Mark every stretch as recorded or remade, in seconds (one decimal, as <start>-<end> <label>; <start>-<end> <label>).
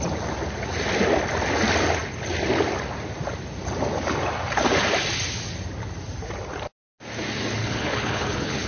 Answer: 0.0-7.6 recorded; 7.6-8.7 remade